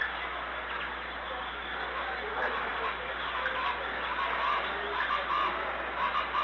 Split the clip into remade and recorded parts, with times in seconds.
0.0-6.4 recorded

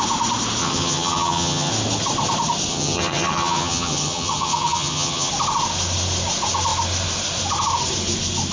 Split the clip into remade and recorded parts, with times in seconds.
0.0-0.6 recorded; 0.6-1.7 remade; 1.7-2.7 recorded; 2.7-5.3 remade; 5.3-8.5 recorded

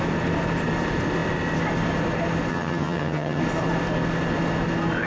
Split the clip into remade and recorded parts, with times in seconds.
0.0-2.5 recorded; 2.5-3.4 remade; 3.4-5.1 recorded

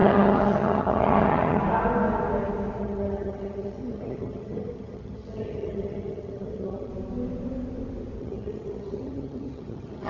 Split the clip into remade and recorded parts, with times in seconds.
0.0-1.6 remade; 1.6-2.8 recorded; 2.8-6.9 remade; 6.9-8.2 recorded; 8.2-10.1 remade